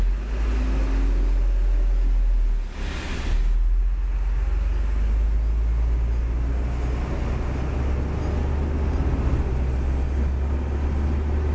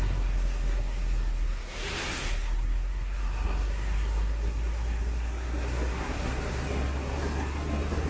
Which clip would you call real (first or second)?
first